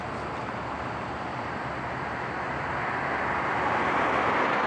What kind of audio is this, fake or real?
real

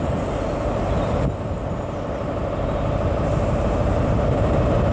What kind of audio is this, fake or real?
real